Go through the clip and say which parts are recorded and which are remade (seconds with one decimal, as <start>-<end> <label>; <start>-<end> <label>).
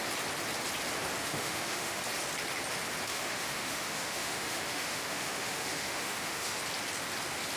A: 0.0-1.2 recorded; 1.2-2.0 remade; 2.0-3.1 recorded; 3.1-6.6 remade; 6.6-7.6 recorded